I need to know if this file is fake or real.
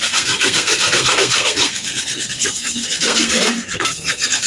fake